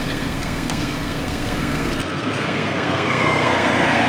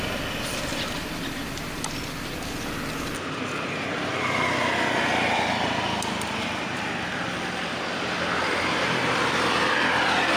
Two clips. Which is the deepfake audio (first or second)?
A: first